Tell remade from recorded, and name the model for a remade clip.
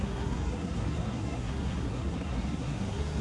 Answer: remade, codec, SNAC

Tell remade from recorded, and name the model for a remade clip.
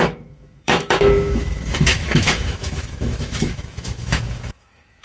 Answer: remade, autoencoder, DAC-VAE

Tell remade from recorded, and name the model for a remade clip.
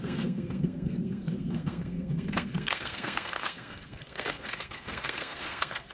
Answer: remade, codec, SNAC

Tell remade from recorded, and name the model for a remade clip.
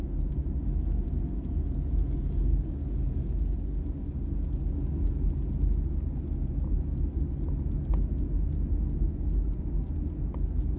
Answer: recorded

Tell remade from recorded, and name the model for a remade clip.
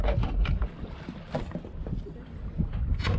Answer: recorded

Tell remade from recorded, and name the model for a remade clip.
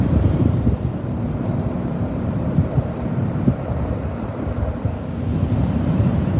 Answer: remade, vocoder, BigVGAN v2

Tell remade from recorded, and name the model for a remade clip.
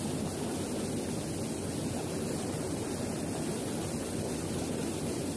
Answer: recorded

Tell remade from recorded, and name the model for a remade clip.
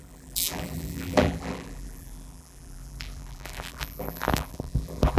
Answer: remade, vocoder, BigVGAN v2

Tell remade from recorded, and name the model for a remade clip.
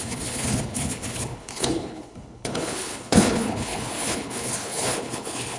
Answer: remade, codec, HILCodec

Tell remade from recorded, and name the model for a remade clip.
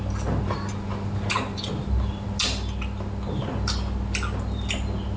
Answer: recorded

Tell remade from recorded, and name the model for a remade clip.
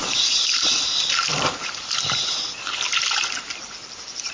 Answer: recorded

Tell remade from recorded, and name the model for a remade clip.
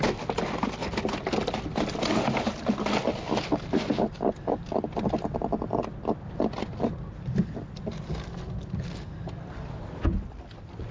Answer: recorded